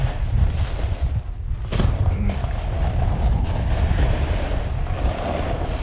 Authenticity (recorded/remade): recorded